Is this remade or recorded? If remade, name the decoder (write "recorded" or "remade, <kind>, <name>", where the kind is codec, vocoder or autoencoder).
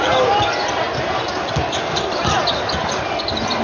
recorded